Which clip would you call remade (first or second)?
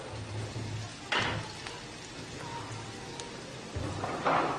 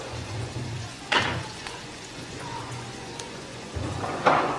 second